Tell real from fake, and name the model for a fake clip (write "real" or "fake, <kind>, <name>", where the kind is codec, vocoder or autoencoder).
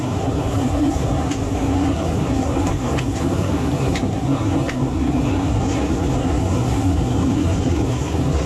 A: fake, codec, SNAC